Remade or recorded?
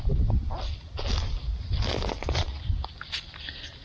recorded